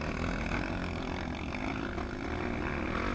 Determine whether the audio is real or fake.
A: real